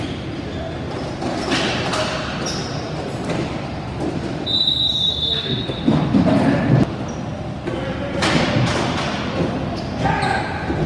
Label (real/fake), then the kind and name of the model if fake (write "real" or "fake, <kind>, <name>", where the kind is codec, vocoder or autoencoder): real